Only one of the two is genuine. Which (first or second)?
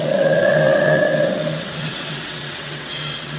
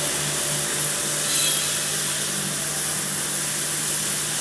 second